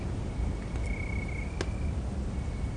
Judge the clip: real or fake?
real